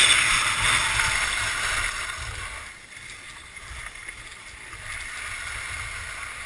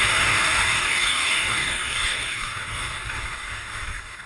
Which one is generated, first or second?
second